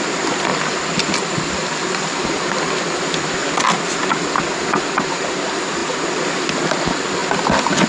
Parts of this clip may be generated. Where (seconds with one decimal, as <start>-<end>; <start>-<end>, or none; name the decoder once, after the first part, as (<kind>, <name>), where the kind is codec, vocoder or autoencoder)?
0.5-1.9 (vocoder, BigVGAN v2); 3.4-4.2

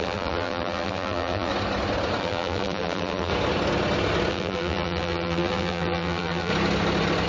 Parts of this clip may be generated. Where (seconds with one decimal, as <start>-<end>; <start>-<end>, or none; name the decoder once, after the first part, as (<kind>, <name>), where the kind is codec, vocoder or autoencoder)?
0.0-1.5 (vocoder, BigVGAN v2); 2.2-3.3; 4.3-6.5